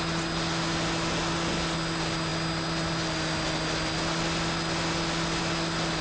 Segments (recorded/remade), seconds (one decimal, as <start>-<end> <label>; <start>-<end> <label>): 0.0-6.0 recorded

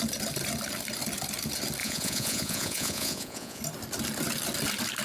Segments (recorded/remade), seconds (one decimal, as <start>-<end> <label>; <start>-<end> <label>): 0.0-1.8 recorded; 1.8-3.6 remade; 3.6-5.0 recorded

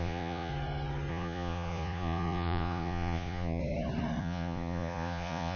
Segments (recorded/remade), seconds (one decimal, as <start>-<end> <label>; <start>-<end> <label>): 0.0-0.5 remade; 0.5-1.1 recorded; 1.1-3.6 remade; 3.6-4.2 recorded; 4.2-5.6 remade

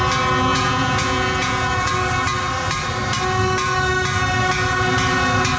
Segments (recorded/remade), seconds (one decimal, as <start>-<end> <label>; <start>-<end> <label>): 0.0-0.5 recorded; 0.5-1.9 remade; 1.9-5.6 recorded

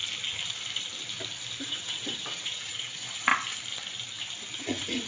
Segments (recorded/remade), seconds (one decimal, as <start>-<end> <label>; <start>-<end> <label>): 0.0-1.6 recorded; 1.6-3.3 remade; 3.3-4.6 recorded; 4.6-5.1 remade